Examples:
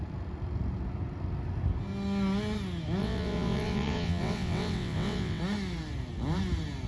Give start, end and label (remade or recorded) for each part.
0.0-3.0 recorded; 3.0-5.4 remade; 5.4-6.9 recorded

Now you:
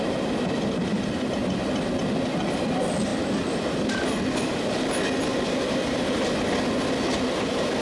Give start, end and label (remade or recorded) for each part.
0.0-7.8 recorded